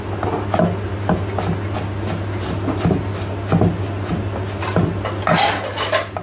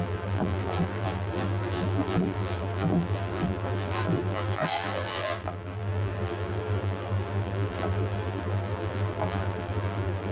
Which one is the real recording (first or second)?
first